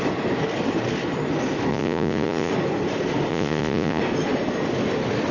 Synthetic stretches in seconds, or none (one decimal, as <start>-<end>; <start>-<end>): 1.7-2.5; 3.3-4.0